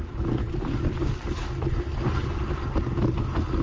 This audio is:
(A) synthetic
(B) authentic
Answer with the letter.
B